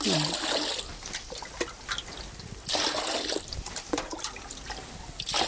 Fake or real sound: real